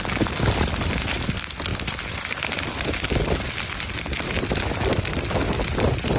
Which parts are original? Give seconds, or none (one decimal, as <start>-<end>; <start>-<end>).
0.0-6.2